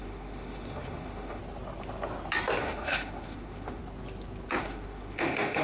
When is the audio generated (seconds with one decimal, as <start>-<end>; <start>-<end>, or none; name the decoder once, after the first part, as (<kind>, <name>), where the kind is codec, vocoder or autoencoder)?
0.0-1.4 (autoencoder, DAC-VAE); 2.6-3.8; 4.6-5.6